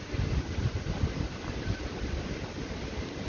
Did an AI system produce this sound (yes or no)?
no